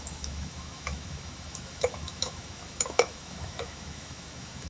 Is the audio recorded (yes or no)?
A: no